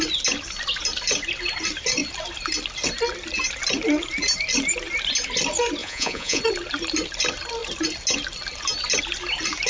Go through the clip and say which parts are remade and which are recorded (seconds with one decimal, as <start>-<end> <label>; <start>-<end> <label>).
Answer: 0.0-5.8 recorded; 5.8-6.4 remade; 6.4-9.7 recorded